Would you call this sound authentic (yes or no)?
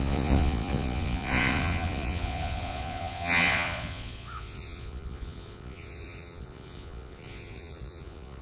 no